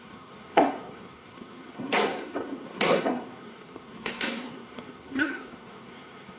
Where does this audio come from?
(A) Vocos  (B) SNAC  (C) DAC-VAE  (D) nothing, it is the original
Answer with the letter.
B